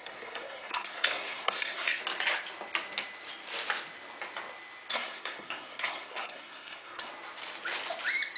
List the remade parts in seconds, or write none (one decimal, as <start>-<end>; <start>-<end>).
0.0-2.0; 4.9-7.1